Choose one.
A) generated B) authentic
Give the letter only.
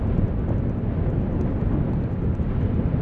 B